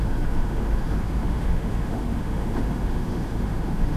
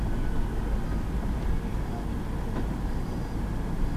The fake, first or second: first